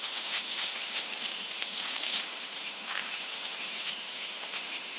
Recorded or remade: remade